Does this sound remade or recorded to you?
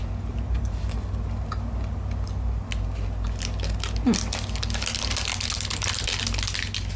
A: recorded